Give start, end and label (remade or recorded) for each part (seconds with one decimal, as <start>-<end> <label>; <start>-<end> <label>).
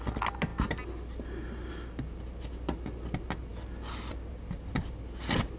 0.0-5.6 recorded